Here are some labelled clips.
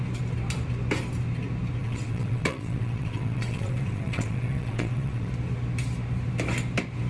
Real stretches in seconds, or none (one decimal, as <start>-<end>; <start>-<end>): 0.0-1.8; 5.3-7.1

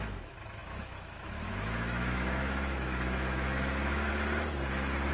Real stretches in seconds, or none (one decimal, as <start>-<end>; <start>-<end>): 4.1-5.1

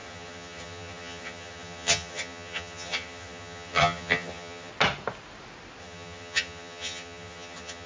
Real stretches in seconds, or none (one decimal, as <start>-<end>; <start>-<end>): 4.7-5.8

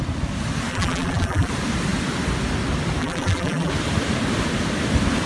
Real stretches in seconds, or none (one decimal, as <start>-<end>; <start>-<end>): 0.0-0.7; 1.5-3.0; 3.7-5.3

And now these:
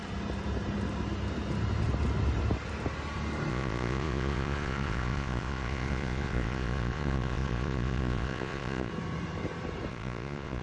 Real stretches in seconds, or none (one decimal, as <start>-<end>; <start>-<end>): 0.0-3.5; 8.9-9.9

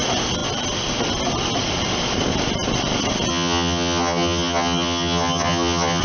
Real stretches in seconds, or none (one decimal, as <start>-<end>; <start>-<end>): 0.0-3.3

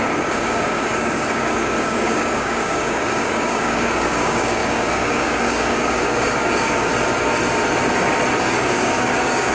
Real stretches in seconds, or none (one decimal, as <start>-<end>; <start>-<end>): 6.9-8.4